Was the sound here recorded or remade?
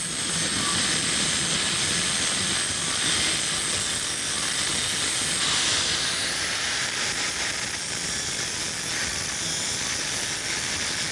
recorded